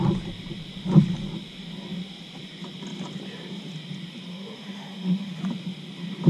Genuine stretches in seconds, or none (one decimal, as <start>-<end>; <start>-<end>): 0.0-4.3; 5.4-6.3